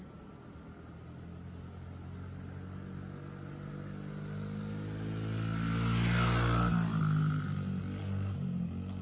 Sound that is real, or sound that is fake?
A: real